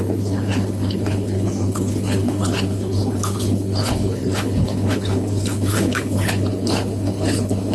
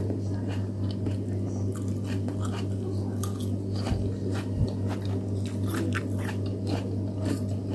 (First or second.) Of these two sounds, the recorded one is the second